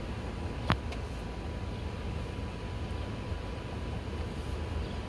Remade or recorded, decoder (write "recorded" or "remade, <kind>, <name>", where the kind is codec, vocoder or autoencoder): recorded